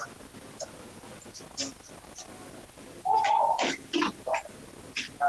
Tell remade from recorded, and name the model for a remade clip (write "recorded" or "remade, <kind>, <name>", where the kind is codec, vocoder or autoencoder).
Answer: recorded